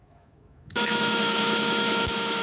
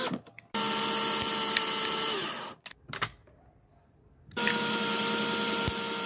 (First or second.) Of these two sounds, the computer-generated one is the first